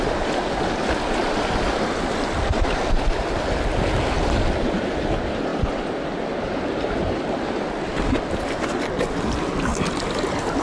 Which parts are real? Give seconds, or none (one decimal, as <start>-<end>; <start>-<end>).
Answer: 0.0-10.6